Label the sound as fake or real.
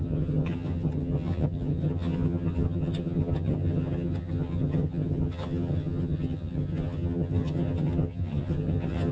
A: fake